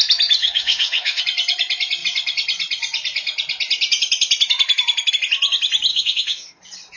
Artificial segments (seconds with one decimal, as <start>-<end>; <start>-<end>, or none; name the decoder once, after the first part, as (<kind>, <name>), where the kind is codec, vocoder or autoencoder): 0.4-1.2 (autoencoder, DAC-VAE); 5.9-6.6